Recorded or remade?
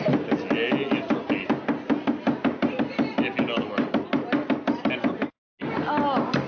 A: recorded